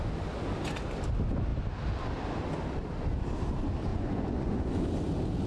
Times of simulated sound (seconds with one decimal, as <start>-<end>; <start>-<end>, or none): 3.9-4.8